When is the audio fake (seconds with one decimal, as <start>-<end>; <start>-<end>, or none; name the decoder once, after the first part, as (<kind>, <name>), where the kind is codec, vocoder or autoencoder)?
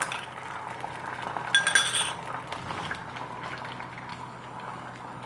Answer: 4.1-5.3 (codec, DAC)